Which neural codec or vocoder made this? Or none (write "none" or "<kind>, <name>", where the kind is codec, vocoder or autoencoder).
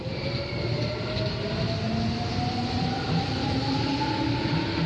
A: none